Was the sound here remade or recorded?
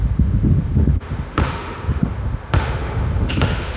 remade